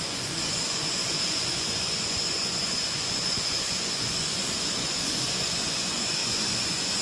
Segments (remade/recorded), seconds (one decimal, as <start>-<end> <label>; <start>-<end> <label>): 0.0-7.0 remade